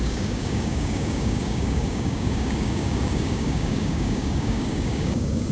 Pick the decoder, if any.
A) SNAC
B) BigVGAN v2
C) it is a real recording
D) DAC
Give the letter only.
D